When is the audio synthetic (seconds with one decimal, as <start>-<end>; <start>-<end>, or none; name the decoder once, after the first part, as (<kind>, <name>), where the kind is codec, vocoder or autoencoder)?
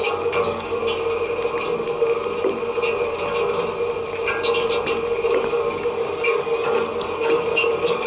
0.0-0.8 (codec, DAC); 5.3-8.1